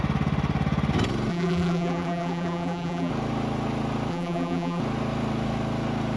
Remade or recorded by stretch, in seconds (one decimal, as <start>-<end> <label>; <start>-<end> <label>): 0.0-1.3 recorded; 1.3-3.1 remade; 3.1-4.1 recorded; 4.1-4.8 remade; 4.8-6.2 recorded